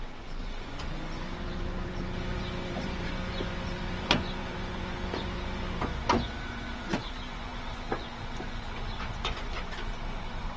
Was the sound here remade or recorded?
remade